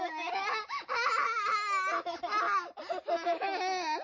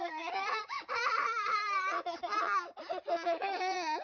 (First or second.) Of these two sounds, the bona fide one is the first